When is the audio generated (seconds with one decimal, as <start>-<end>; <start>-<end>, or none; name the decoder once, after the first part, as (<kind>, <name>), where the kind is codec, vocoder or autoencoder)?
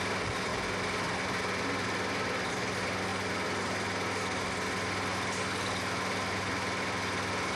none